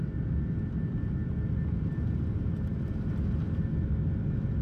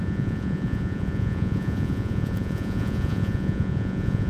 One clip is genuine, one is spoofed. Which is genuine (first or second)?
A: first